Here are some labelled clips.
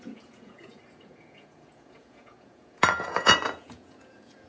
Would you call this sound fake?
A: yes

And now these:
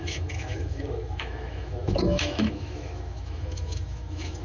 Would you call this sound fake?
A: yes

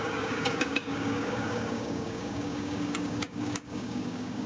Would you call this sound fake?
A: yes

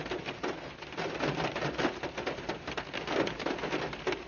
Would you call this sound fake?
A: no